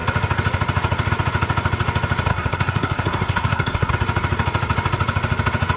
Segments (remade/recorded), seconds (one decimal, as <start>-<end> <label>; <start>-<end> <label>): 0.0-2.3 recorded; 2.3-3.9 remade; 3.9-5.8 recorded